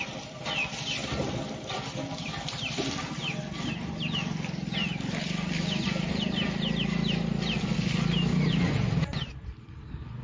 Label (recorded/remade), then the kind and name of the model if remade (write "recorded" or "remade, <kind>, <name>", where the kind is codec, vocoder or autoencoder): remade, vocoder, BigVGAN v2